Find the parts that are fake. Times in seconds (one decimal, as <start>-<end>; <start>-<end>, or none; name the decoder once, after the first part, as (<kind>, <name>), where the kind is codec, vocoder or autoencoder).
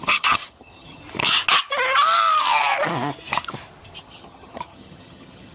0.0-1.0 (vocoder, HiFi-GAN); 4.0-5.5